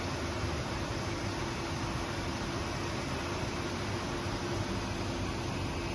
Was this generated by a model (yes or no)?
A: no